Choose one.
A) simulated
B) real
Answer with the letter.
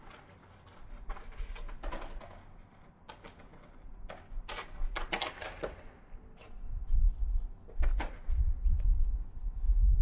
B